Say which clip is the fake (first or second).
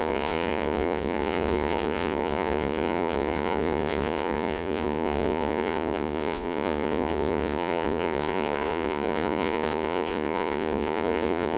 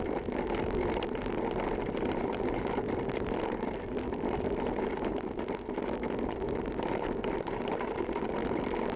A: first